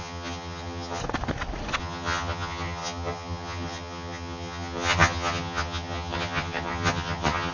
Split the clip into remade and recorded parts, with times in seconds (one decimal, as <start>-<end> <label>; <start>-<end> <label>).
0.0-1.0 remade; 1.0-1.8 recorded; 1.8-7.5 remade